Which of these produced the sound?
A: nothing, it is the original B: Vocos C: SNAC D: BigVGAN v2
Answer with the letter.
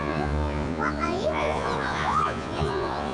B